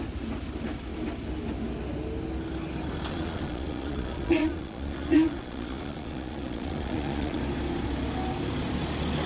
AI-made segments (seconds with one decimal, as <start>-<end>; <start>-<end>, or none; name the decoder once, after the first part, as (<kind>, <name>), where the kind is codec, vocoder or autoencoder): 3.1-7.4 (vocoder, Vocos)